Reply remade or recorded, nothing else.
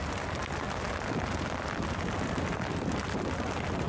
recorded